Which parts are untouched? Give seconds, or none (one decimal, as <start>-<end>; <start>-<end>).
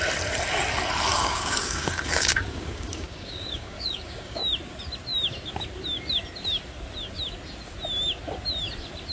0.0-1.1; 4.4-9.1